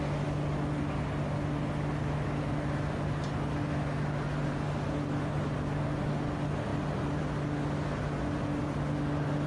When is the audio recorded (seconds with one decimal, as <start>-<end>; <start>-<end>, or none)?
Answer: 0.0-9.5